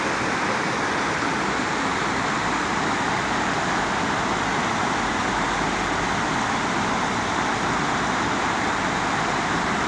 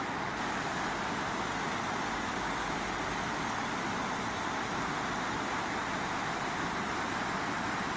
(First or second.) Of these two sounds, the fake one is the first